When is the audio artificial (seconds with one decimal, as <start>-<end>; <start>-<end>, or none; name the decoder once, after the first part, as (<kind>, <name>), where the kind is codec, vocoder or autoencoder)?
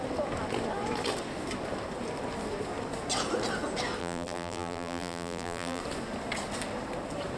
4.0-5.8 (vocoder, BigVGAN v2)